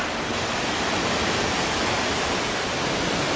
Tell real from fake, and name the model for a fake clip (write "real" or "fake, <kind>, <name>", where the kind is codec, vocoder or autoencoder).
real